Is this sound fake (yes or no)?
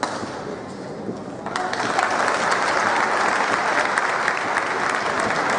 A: no